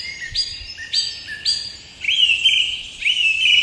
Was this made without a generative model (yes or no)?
yes